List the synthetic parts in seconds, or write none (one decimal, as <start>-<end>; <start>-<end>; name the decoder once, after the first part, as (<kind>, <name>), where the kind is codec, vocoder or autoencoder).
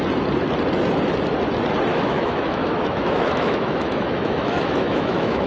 1.9-5.5 (autoencoder, DAC-VAE)